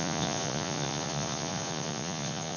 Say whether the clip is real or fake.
fake